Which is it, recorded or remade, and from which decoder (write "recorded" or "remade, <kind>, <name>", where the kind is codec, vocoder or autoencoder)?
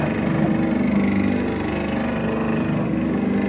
recorded